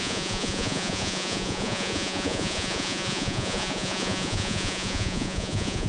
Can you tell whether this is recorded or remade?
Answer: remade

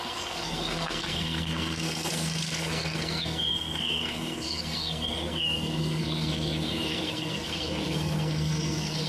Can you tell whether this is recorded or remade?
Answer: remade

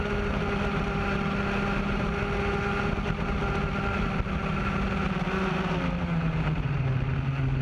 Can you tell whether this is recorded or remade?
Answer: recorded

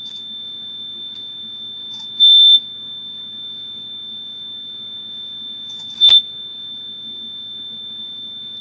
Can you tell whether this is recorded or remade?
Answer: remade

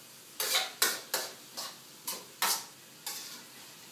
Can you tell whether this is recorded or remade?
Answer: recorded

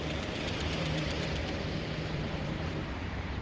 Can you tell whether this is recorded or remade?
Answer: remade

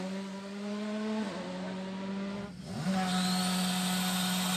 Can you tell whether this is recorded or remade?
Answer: recorded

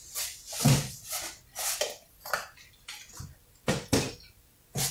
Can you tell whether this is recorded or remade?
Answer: recorded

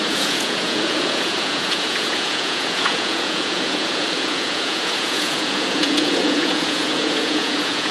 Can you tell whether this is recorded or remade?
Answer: remade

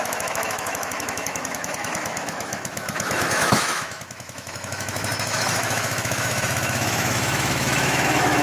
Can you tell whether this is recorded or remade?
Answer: remade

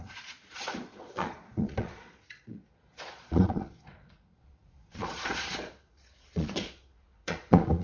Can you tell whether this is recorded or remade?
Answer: remade